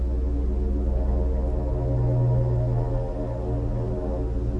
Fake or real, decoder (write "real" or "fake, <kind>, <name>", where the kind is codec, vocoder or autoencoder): real